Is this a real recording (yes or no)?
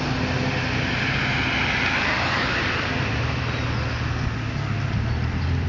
yes